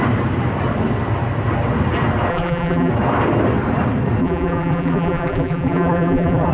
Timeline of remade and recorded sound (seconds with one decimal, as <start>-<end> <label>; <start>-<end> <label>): 0.0-2.3 recorded; 2.3-2.9 remade; 2.9-4.2 recorded; 4.2-6.5 remade